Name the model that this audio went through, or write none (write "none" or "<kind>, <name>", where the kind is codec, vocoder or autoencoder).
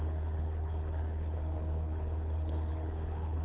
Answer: codec, HILCodec